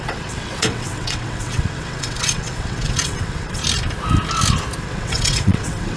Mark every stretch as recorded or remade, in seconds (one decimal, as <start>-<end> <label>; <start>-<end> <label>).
0.0-3.6 remade; 3.6-4.8 recorded; 4.8-6.0 remade